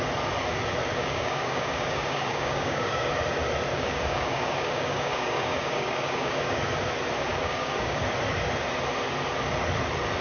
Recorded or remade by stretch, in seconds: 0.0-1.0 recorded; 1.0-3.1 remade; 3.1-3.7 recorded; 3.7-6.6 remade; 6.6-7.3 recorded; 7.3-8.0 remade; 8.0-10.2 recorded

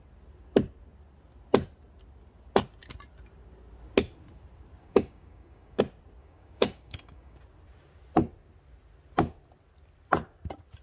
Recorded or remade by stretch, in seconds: 0.0-4.8 recorded; 4.8-5.8 remade; 5.8-6.2 recorded; 6.2-7.4 remade; 7.4-10.8 recorded